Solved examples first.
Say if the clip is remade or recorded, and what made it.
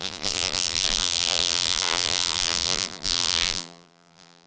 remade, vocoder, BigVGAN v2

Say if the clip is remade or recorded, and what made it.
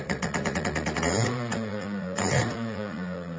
remade, vocoder, Vocos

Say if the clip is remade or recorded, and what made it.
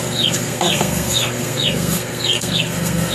remade, codec, SNAC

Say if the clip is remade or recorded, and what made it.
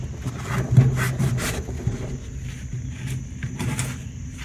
recorded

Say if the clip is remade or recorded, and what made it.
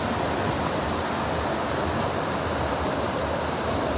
recorded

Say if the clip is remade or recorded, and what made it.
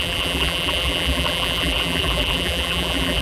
remade, vocoder, BigVGAN v2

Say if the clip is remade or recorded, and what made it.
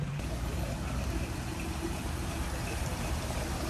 remade, vocoder, BigVGAN v2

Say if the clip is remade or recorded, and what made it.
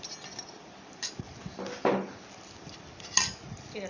recorded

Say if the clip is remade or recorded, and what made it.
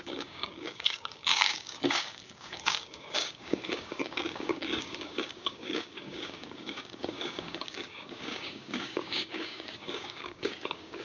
remade, codec, DAC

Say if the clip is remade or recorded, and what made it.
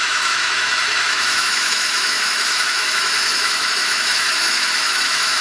remade, autoencoder, DAC-VAE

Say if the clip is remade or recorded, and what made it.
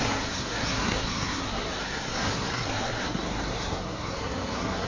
remade, codec, SNAC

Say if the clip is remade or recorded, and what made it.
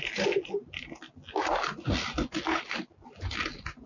recorded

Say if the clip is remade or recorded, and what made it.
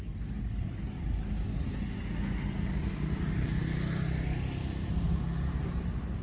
recorded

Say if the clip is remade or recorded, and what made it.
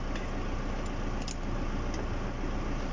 recorded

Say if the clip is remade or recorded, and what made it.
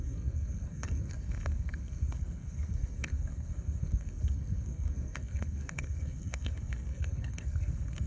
remade, codec, SNAC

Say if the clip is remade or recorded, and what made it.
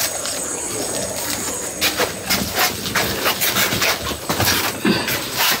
recorded